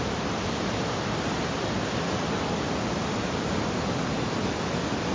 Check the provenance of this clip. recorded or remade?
recorded